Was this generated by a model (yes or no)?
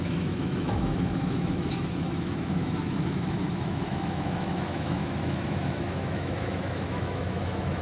yes